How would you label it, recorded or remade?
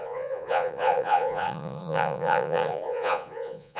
remade